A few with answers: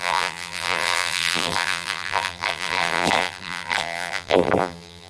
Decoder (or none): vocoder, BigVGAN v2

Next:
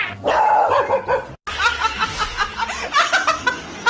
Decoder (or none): none